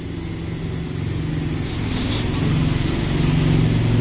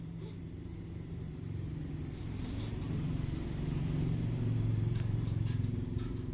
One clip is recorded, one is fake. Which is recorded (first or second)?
first